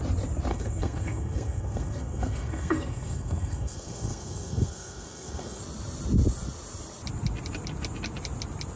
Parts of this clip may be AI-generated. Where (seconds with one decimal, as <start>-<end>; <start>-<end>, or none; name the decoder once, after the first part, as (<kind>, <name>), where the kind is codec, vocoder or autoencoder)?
0.5-5.6 (codec, SNAC)